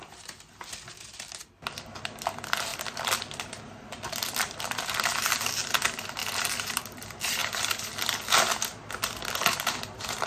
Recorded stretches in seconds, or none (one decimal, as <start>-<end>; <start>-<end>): 0.0-2.7; 3.7-4.2; 5.2-7.4; 8.0-10.3